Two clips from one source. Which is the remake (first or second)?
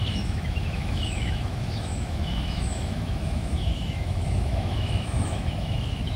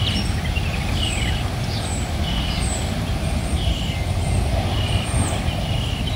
first